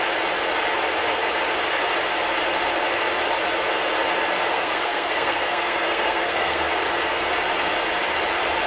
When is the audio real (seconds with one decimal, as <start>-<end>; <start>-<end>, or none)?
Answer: 0.0-4.5; 6.7-8.7